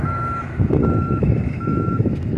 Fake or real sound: fake